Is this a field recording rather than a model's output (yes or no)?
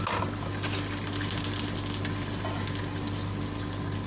yes